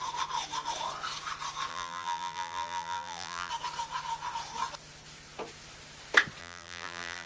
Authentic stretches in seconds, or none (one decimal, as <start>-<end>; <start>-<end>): 0.0-1.7; 3.5-6.4